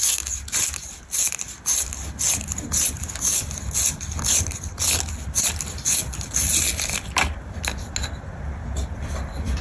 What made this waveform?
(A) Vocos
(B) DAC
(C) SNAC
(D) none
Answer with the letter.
D